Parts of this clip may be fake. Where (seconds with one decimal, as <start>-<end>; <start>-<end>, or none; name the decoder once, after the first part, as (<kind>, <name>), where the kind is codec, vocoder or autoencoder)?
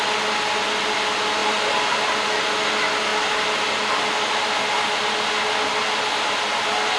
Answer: none